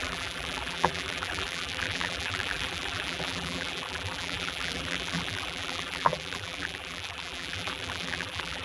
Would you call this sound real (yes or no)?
no